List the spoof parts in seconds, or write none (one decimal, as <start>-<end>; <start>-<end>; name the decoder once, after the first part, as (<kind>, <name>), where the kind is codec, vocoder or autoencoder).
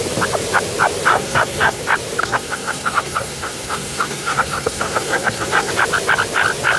1.1-1.8 (codec, SNAC); 2.2-5.7